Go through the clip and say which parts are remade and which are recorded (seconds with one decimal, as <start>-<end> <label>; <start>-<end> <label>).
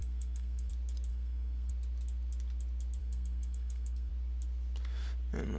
0.0-0.7 remade; 0.7-1.1 recorded; 1.1-1.7 remade; 1.7-3.0 recorded; 3.0-4.1 remade; 4.1-5.6 recorded